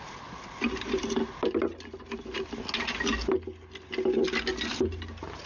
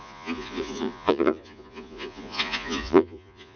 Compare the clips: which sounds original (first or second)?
first